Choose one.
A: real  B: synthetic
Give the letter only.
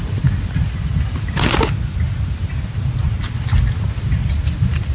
A